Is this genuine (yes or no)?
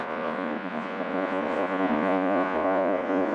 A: no